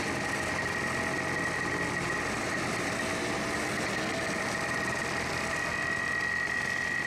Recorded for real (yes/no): yes